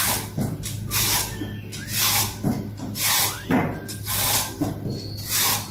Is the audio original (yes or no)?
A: yes